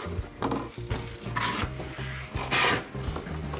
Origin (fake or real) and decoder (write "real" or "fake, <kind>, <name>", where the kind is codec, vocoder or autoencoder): real